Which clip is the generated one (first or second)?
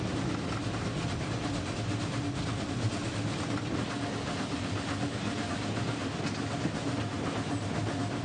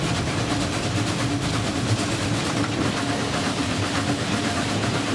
second